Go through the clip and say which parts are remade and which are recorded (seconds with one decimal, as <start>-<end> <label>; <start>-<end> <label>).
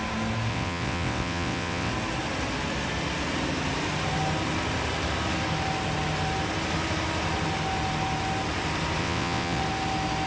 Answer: 0.0-0.5 recorded; 0.5-1.9 remade; 1.9-9.0 recorded; 9.0-9.6 remade; 9.6-10.3 recorded